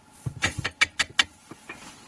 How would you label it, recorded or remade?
recorded